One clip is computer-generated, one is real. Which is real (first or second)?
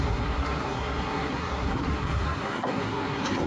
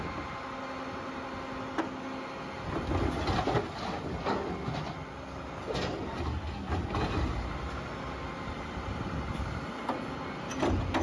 second